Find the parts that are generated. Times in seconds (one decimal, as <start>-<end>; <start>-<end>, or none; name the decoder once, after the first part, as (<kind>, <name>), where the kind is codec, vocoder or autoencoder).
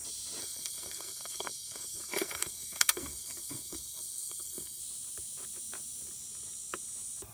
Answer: 0.4-4.8 (codec, SNAC)